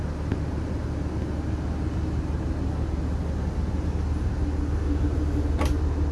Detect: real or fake real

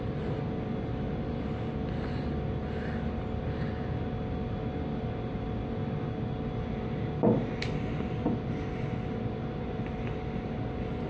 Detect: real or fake real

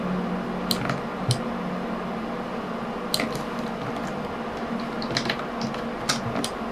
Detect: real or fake real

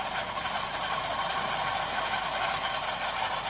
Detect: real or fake real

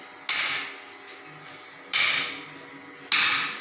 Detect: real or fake real